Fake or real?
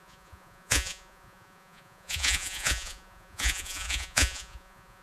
fake